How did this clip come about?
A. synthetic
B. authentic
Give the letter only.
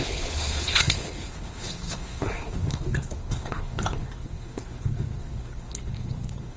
A